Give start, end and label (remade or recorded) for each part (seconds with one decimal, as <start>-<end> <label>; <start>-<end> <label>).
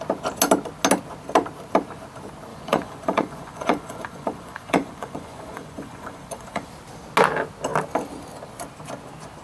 0.0-2.5 recorded; 2.5-6.7 remade; 6.7-9.4 recorded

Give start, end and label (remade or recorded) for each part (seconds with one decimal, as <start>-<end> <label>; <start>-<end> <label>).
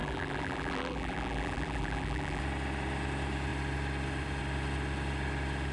0.0-2.4 remade; 2.4-5.7 recorded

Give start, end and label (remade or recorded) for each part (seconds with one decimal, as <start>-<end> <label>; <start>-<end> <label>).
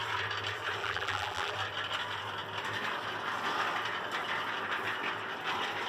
0.0-0.8 recorded; 0.8-1.5 remade; 1.5-5.9 recorded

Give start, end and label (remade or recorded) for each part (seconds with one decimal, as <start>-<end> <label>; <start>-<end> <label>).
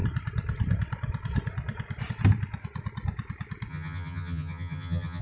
0.0-3.7 recorded; 3.7-5.2 remade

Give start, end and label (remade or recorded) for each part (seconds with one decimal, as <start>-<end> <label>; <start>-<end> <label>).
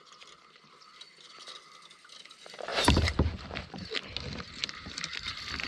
0.0-2.7 recorded; 2.7-3.9 remade; 3.9-5.7 recorded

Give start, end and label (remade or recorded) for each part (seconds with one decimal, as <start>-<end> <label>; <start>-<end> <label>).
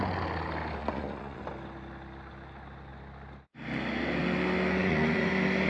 0.0-0.8 recorded; 0.8-1.4 remade; 1.4-4.8 recorded; 4.8-5.3 remade; 5.3-5.7 recorded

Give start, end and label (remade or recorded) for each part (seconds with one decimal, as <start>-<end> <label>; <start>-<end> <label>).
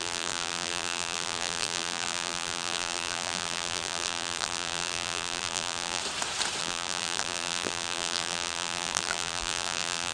0.0-6.0 remade; 6.0-6.6 recorded; 6.6-10.1 remade